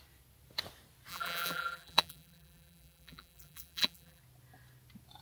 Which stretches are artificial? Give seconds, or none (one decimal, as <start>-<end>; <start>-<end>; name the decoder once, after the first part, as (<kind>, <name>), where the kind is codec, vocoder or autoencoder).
1.1-4.2 (vocoder, BigVGAN v2)